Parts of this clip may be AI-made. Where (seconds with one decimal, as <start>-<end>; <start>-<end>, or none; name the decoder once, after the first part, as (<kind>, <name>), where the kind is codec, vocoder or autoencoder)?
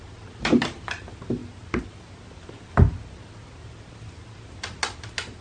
none